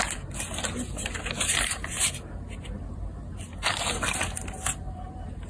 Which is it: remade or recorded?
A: recorded